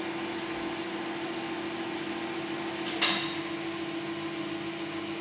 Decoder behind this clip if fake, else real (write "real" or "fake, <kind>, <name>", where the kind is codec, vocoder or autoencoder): real